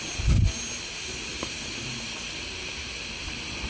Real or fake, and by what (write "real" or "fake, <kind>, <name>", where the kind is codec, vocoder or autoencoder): real